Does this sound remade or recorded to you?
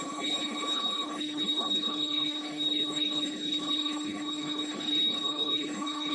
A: remade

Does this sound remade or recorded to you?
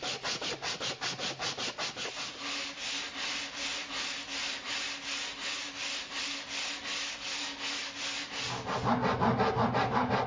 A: recorded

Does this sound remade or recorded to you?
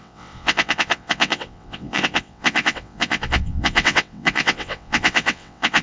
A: remade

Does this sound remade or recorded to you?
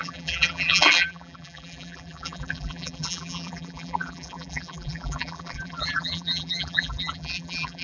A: remade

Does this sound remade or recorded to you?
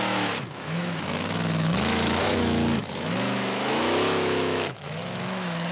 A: remade